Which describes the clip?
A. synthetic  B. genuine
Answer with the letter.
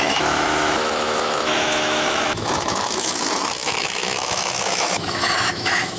A